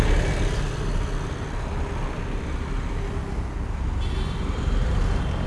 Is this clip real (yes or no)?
yes